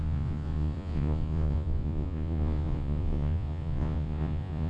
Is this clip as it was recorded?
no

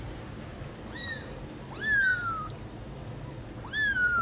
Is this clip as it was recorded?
yes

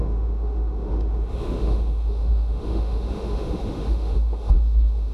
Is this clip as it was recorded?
no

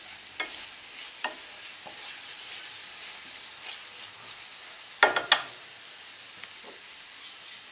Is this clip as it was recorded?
yes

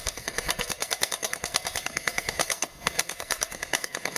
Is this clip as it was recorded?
no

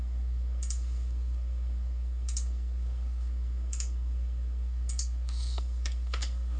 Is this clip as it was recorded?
no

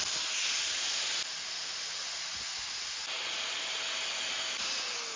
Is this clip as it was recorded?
yes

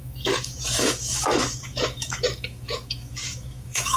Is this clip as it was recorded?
no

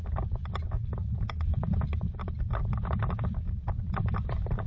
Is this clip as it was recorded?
yes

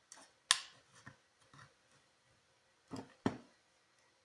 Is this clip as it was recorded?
yes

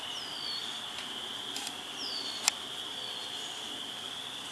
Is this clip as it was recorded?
yes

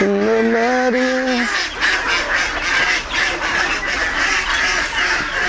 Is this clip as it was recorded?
yes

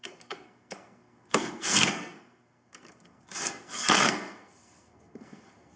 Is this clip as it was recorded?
no